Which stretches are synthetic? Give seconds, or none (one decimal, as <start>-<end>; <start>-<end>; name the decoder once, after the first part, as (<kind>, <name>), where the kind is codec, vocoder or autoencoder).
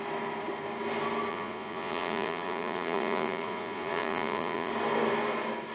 1.3-4.7 (vocoder, Vocos)